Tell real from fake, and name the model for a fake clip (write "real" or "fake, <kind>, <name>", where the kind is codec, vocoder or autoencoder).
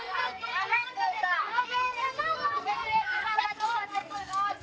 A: fake, codec, SNAC